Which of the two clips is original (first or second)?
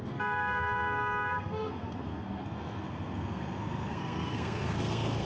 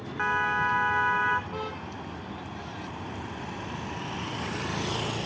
second